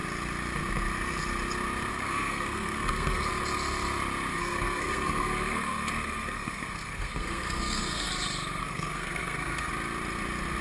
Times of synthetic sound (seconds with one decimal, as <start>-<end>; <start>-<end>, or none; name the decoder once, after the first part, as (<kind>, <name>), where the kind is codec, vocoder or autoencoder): 1.9-3.3 (codec, SNAC); 4.3-8.1; 8.6-9.7

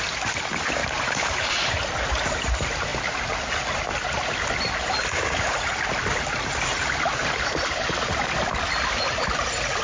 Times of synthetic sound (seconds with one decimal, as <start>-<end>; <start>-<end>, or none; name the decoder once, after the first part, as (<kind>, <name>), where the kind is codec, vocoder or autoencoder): 0.8-1.7 (vocoder, BigVGAN v2)

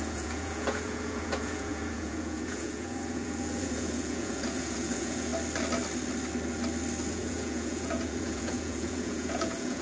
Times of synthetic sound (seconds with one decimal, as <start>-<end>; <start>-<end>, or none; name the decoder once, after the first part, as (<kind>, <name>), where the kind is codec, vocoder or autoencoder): 0.0-5.3 (vocoder, Vocos); 7.1-9.8

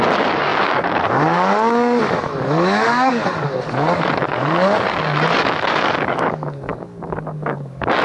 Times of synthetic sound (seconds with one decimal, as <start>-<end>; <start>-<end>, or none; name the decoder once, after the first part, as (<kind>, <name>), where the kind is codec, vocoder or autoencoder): 0.0-8.0 (codec, DAC)

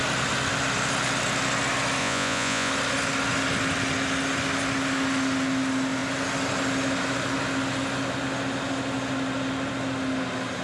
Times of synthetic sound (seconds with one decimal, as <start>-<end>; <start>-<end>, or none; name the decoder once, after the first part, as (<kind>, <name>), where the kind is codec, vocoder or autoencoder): 2.0-2.7 (vocoder, Vocos)

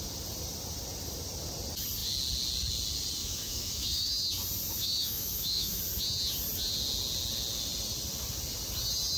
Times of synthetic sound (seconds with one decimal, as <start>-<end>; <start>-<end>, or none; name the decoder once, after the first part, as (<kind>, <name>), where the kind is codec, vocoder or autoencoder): 3.2-4.1 (autoencoder, DAC-VAE); 4.8-5.8

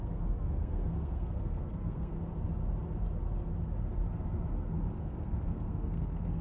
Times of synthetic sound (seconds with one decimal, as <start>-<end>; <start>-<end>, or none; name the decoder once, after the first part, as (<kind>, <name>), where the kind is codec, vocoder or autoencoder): 0.0-2.1 (codec, SNAC); 5.0-6.4

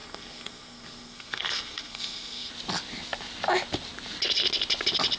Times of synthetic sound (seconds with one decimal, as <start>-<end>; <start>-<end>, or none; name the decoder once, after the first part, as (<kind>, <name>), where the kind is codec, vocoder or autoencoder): 0.0-2.5 (codec, SNAC)